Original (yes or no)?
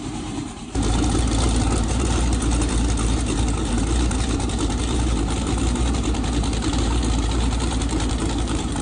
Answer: no